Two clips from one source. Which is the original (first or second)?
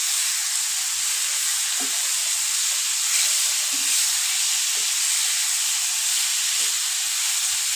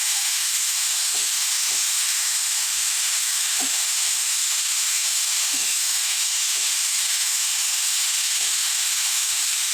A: first